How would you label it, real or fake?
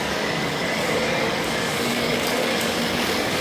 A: fake